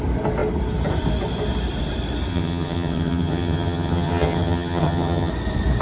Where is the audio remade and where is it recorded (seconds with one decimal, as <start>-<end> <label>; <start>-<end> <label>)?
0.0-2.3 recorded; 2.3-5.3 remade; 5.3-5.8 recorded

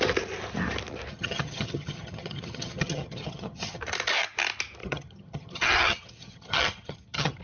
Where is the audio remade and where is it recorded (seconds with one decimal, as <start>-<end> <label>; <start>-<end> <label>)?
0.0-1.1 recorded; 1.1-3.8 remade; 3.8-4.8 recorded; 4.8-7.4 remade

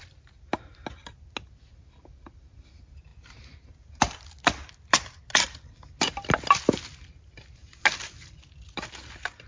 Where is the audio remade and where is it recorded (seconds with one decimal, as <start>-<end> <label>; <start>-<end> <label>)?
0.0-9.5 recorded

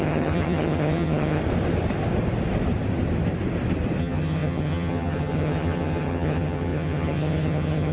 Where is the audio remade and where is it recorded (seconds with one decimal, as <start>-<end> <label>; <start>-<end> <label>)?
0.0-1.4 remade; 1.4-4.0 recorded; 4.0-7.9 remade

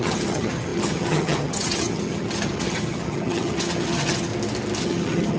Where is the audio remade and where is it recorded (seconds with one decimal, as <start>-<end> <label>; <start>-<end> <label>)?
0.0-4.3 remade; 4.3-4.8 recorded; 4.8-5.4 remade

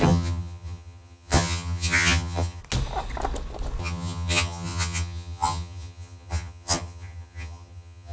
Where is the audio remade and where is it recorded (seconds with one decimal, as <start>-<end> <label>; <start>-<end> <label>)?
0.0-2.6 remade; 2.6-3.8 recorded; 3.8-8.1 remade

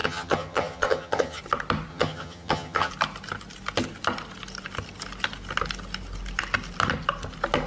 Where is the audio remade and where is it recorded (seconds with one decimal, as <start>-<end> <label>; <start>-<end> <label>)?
0.0-1.4 remade; 1.4-1.9 recorded; 1.9-2.9 remade; 2.9-7.7 recorded